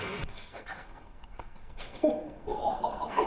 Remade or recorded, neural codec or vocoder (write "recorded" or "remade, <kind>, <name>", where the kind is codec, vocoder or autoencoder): remade, codec, SNAC